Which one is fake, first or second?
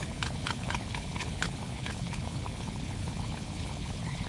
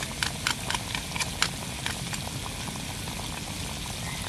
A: first